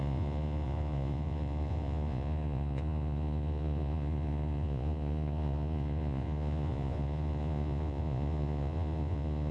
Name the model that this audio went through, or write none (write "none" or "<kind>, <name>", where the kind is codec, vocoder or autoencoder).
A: vocoder, Vocos